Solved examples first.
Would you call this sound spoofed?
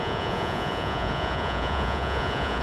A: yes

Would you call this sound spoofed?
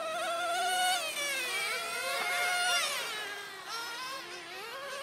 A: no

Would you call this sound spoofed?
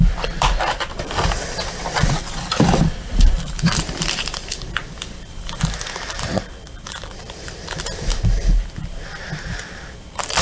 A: yes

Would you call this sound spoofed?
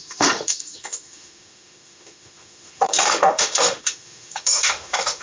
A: yes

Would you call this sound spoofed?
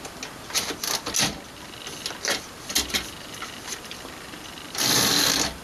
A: no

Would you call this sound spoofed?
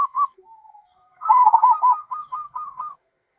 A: yes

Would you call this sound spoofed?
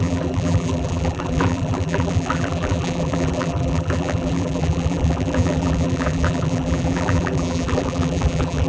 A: yes